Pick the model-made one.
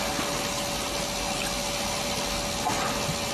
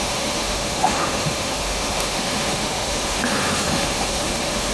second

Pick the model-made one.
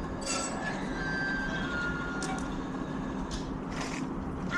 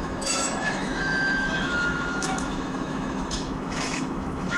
second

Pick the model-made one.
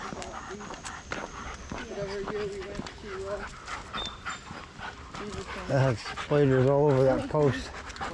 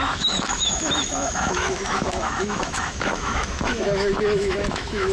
second